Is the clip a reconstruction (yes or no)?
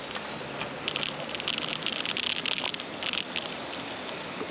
no